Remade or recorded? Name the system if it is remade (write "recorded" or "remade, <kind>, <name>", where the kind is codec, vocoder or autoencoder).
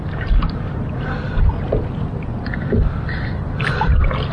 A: remade, vocoder, BigVGAN v2